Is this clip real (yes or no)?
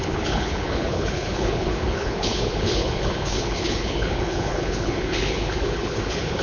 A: no